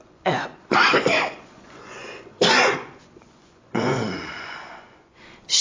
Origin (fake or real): fake